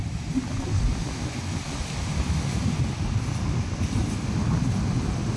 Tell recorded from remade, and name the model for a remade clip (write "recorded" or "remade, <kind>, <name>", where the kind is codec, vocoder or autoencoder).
recorded